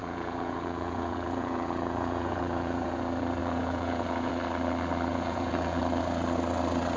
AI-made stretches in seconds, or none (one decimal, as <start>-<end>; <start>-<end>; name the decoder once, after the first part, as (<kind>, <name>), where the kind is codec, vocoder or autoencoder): 0.0-3.0 (vocoder, Vocos); 3.4-4.3; 5.1-5.8